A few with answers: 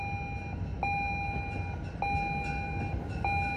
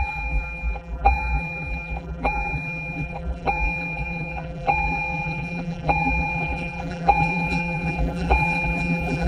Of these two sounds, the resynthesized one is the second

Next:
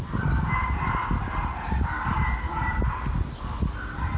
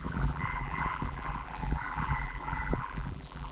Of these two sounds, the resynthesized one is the second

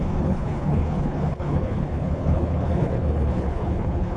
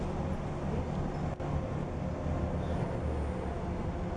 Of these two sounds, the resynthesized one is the first